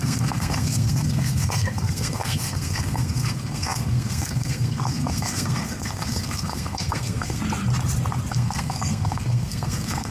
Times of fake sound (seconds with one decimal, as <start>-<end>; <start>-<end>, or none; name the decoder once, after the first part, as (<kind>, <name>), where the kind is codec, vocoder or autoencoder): 0.0-7.4 (codec, SNAC); 8.3-10.1